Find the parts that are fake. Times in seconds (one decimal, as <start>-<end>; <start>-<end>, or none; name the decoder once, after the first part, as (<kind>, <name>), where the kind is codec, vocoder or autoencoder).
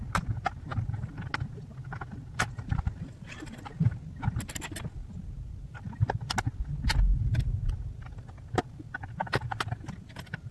none